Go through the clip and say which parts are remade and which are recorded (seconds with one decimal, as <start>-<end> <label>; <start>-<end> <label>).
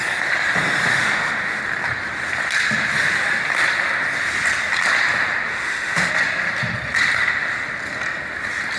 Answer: 0.0-0.9 recorded; 0.9-1.6 remade; 1.6-5.5 recorded; 5.5-6.1 remade; 6.1-8.8 recorded